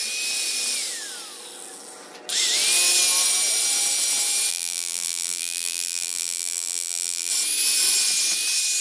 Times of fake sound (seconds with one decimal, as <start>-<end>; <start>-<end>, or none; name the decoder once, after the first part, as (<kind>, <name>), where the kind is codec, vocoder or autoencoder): 4.5-7.3 (vocoder, BigVGAN v2)